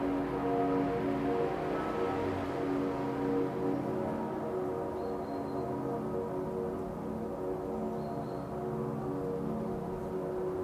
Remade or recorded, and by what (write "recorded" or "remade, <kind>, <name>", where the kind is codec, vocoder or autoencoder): recorded